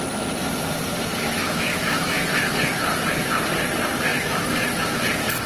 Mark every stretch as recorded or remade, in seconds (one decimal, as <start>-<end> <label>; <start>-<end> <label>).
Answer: 0.0-1.1 recorded; 1.1-2.2 remade; 2.2-4.1 recorded; 4.1-5.0 remade; 5.0-5.5 recorded